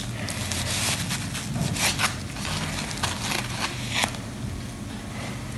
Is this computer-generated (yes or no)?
no